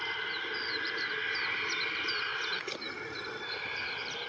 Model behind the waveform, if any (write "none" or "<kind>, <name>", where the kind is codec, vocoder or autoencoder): none